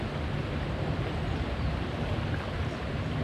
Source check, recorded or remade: recorded